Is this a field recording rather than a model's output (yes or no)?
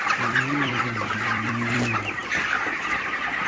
no